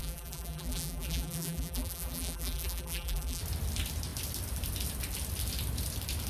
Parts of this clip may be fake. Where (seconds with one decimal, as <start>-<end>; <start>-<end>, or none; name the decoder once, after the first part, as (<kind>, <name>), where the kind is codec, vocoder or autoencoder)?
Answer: 0.0-3.4 (vocoder, BigVGAN v2)